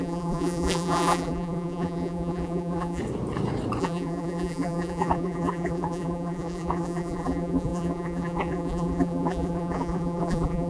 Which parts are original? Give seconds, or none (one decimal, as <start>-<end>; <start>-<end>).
3.0-3.8